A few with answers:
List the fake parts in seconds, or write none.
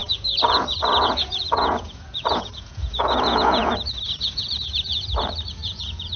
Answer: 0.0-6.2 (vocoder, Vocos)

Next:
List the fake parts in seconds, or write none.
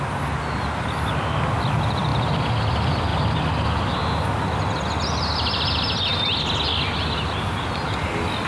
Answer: none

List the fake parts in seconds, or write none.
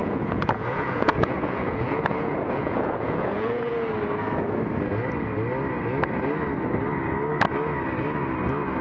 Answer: 0.0-3.7 (vocoder, Vocos)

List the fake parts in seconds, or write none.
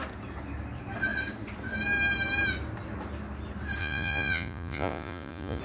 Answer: 3.8-5.6 (vocoder, Vocos)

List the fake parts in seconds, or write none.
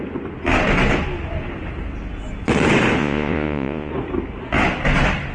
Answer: 3.0-3.9 (vocoder, Vocos)